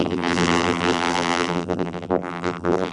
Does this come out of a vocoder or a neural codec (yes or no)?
yes